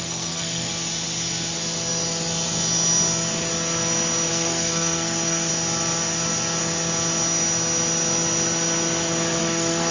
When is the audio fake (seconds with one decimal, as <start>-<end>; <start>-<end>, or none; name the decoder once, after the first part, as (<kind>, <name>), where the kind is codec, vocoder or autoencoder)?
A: 0.0-0.7 (codec, SNAC); 4.3-5.5; 9.4-9.9